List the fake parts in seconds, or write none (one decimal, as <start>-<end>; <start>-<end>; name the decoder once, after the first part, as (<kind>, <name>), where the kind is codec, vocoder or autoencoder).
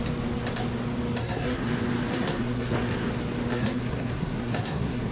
1.2-1.7 (codec, SNAC); 2.1-2.7; 3.5-5.1